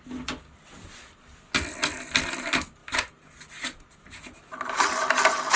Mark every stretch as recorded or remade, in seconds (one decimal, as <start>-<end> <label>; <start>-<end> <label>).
0.0-5.6 recorded